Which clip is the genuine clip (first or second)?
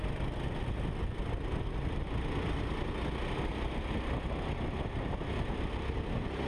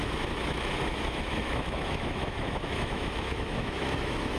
first